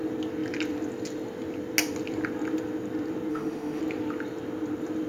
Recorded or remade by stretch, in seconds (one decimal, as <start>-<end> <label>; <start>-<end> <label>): 0.0-3.3 recorded; 3.3-3.8 remade; 3.8-5.1 recorded